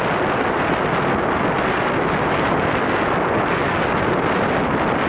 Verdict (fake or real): real